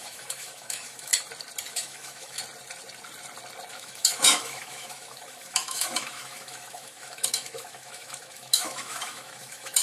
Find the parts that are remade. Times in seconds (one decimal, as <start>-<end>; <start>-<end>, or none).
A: 0.0-1.1; 1.7-2.4; 3.7-9.8